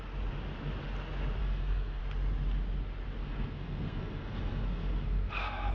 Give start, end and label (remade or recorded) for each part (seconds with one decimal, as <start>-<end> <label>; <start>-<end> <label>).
0.0-1.4 recorded; 1.4-2.0 remade; 2.0-3.2 recorded; 3.2-5.7 remade